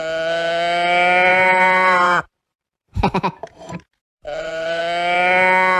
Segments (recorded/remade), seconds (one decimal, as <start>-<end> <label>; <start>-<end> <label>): 0.0-1.3 recorded; 1.3-4.8 remade; 4.8-5.8 recorded